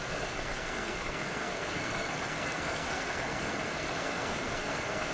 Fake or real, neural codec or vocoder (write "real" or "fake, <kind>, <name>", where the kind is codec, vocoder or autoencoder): fake, codec, SNAC